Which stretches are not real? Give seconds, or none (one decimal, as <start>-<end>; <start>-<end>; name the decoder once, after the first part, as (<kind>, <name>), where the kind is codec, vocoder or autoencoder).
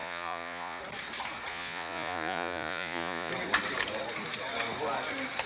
0.0-0.8 (vocoder, Vocos); 1.5-3.3